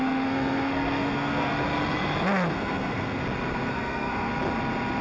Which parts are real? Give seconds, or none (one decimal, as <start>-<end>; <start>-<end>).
1.5-2.5; 3.2-3.7; 4.3-5.0